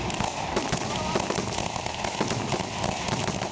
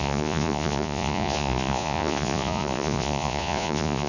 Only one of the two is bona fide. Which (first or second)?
first